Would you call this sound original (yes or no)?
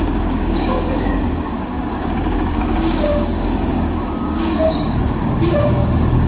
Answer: no